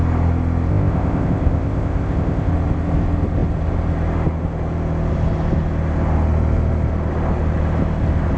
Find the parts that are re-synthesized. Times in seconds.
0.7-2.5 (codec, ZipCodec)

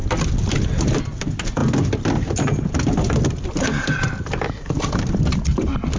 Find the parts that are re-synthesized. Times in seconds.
none

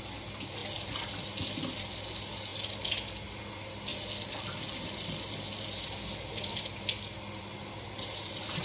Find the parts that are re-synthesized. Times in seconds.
none

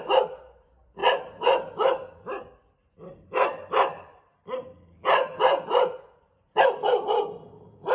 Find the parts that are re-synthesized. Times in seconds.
0.0-1.0 (vocoder, BigVGAN v2); 3.7-4.3